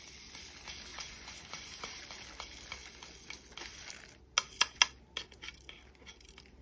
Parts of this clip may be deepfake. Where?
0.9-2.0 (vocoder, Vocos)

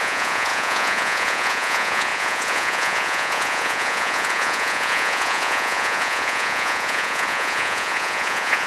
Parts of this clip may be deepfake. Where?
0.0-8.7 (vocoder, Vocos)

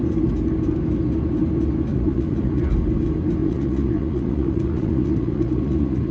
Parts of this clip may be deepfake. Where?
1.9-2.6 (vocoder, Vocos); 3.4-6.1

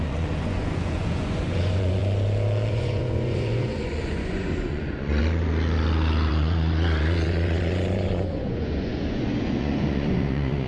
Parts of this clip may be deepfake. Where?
0.0-2.0 (vocoder, Vocos); 2.7-5.2; 6.3-10.7

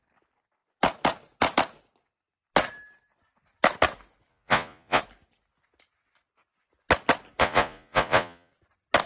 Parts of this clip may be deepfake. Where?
4.3-5.0 (vocoder, Vocos); 7.4-8.5

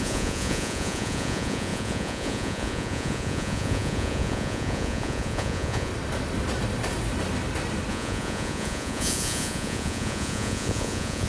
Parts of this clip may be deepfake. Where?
0.0-5.9 (vocoder, Vocos); 7.9-11.3

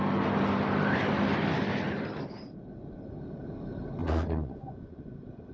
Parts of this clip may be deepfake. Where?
4.0-5.1 (vocoder, Vocos)

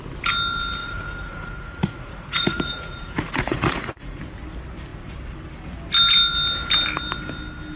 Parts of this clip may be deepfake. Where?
0.8-4.2 (vocoder, Vocos)